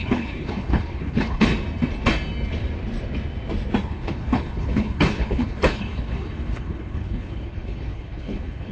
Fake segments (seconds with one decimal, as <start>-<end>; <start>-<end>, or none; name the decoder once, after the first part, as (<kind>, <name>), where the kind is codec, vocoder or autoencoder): 0.0-1.5 (codec, HILCodec); 3.8-8.7